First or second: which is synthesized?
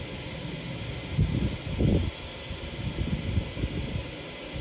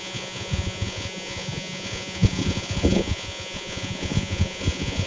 second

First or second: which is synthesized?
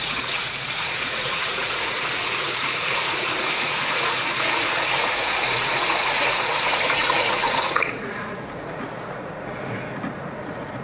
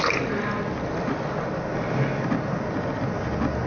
first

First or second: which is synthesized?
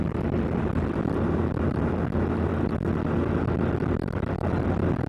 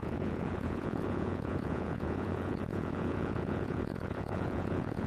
second